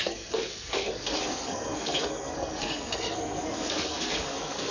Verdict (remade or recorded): remade